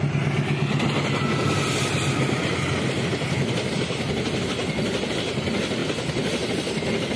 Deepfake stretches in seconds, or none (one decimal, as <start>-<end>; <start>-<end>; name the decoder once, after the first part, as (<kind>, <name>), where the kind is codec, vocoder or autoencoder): none